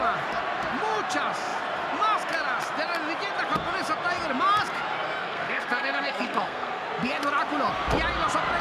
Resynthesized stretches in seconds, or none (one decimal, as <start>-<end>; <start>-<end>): 5.2-6.7